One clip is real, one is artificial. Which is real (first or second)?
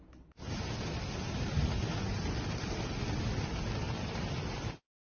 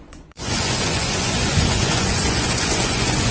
first